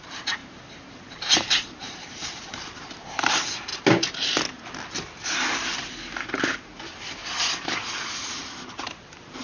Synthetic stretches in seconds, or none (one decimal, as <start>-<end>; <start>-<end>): 0.0-3.7; 8.4-9.4